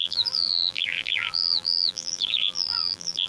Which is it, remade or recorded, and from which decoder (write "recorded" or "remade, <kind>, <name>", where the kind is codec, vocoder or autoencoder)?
remade, vocoder, BigVGAN v2